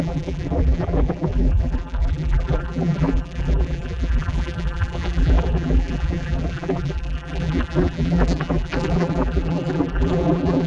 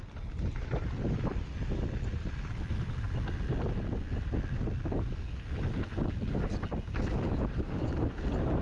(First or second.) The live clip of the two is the second